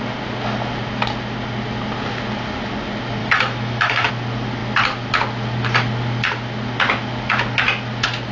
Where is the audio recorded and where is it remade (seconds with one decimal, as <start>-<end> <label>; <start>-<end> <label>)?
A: 0.0-3.2 recorded; 3.2-4.1 remade; 4.1-8.3 recorded